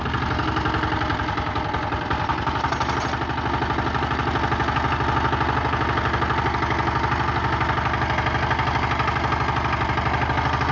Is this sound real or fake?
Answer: real